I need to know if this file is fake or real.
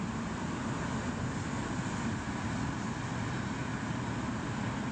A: real